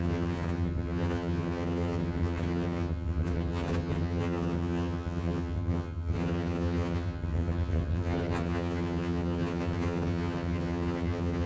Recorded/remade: remade